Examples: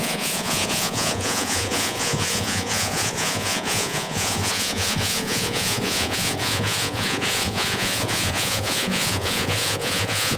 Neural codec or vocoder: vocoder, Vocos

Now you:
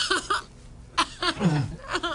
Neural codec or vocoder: none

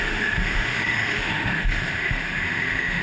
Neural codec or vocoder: autoencoder, DAC-VAE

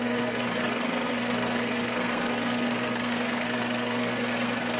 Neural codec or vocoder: codec, SNAC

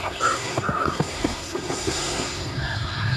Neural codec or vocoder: codec, SNAC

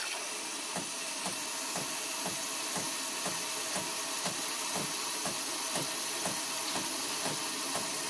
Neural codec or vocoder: none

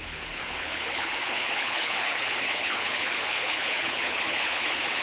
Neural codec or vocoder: codec, HILCodec